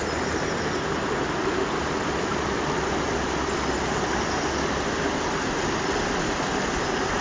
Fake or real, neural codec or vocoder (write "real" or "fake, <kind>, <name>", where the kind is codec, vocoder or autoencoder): real